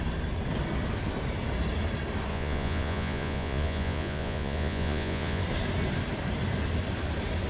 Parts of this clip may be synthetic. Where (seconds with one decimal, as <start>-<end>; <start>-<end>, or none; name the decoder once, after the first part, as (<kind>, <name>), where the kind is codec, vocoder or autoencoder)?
2.3-5.4 (vocoder, Vocos)